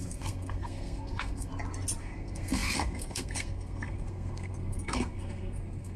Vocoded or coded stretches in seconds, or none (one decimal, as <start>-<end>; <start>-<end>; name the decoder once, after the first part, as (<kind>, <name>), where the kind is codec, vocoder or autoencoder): 0.0-1.5 (codec, SNAC); 2.0-6.0